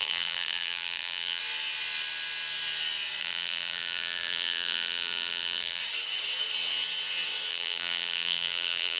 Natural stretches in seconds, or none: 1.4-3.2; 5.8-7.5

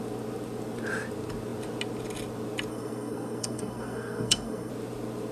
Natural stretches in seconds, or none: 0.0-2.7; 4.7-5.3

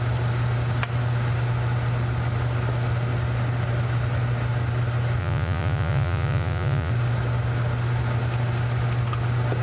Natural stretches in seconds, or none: 0.0-5.2; 6.9-9.6